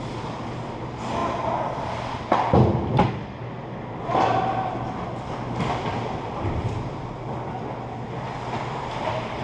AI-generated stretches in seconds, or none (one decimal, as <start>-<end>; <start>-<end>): none